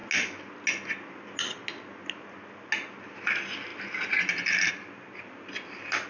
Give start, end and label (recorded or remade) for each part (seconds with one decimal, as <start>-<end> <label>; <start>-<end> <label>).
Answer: 0.0-6.1 recorded